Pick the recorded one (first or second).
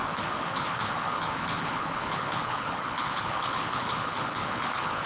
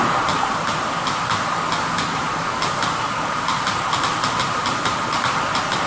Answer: second